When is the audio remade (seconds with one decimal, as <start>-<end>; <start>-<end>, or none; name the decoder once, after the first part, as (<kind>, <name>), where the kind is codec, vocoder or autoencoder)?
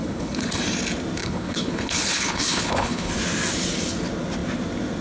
0.0-0.5 (codec, HILCodec); 1.2-3.1